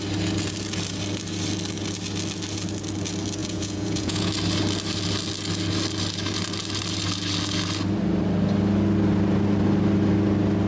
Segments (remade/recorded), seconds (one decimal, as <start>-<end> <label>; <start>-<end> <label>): 0.0-3.4 recorded; 3.4-4.3 remade; 4.3-10.7 recorded